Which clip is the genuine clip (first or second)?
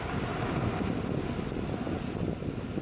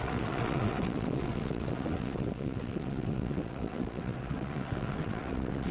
first